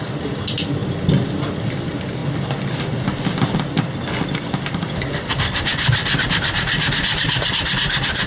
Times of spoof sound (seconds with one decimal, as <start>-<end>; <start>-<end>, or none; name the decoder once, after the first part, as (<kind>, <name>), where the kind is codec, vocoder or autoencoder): 0.0-2.2 (vocoder, BigVGAN v2); 5.3-8.3